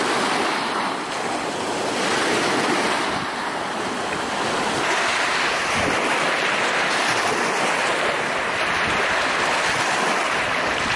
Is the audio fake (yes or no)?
no